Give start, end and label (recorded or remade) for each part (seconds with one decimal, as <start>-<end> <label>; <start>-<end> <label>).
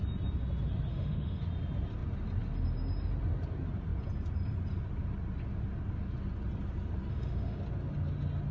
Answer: 0.0-0.9 recorded; 0.9-1.4 remade; 1.4-7.1 recorded; 7.1-7.6 remade; 7.6-8.5 recorded